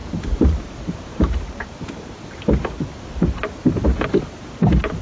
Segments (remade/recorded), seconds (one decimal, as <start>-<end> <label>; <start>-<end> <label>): 0.0-0.6 remade; 0.6-1.1 recorded; 1.1-2.2 remade; 2.2-5.0 recorded